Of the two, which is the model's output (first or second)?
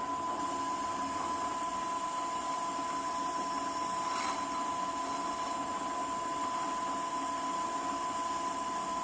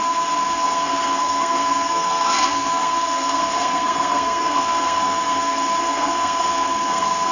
second